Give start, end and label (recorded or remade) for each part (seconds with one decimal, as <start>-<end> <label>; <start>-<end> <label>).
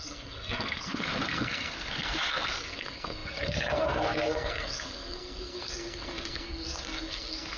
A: 0.0-7.6 remade